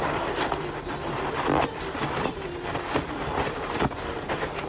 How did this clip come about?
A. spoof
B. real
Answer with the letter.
B